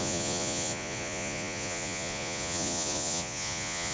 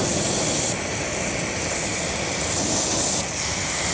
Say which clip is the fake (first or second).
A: first